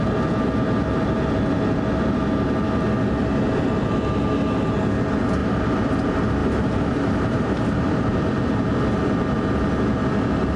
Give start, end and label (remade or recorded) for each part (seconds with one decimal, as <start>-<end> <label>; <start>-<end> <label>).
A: 0.0-5.4 recorded; 5.4-5.9 remade; 5.9-6.4 recorded; 6.4-8.1 remade; 8.1-10.6 recorded